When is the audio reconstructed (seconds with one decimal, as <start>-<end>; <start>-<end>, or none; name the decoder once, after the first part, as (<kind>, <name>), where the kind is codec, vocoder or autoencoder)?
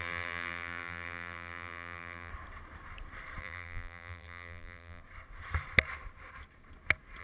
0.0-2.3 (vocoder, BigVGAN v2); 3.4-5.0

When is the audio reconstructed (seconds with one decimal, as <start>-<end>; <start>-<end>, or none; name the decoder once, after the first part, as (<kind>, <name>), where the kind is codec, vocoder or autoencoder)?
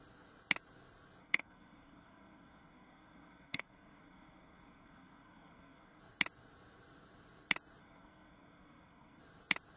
1.2-6.0 (codec, SNAC); 7.8-9.2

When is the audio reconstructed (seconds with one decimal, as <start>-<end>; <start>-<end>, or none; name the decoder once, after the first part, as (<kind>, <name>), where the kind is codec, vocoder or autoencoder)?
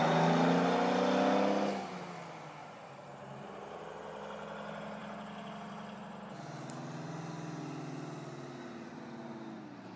2.6-3.8 (vocoder, BigVGAN v2)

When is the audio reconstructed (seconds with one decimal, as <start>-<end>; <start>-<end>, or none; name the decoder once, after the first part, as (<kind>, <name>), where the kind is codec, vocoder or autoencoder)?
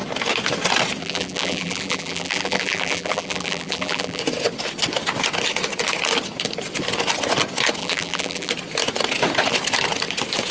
1.0-4.2 (vocoder, BigVGAN v2); 7.8-8.5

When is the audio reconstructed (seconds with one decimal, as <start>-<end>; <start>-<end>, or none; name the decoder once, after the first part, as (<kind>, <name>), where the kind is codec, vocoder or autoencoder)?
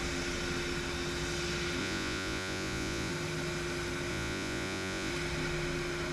1.8-3.1 (vocoder, Vocos); 4.1-5.1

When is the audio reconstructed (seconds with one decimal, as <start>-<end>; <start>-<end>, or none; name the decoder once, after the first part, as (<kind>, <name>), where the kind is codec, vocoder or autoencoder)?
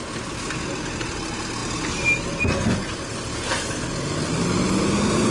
none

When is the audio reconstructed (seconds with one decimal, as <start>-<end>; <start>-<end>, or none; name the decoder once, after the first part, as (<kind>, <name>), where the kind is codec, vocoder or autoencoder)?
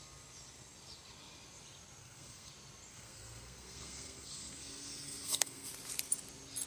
2.0-2.5 (codec, SNAC); 2.9-5.7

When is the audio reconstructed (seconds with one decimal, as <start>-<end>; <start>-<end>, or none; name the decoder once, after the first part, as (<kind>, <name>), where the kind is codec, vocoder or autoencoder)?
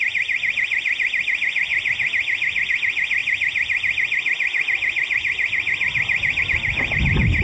none